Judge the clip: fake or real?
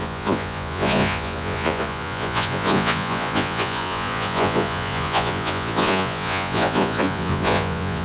fake